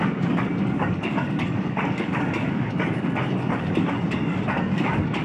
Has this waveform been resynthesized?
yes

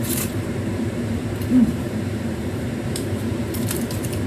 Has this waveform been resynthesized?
yes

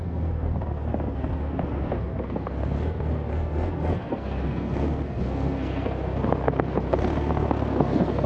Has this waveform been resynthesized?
yes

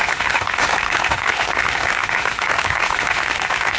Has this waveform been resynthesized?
yes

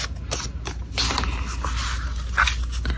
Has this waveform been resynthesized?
no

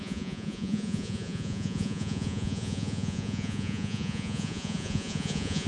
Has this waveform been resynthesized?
yes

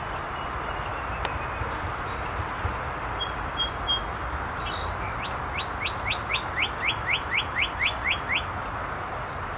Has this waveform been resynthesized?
no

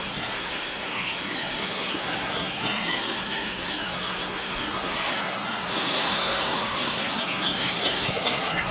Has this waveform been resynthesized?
yes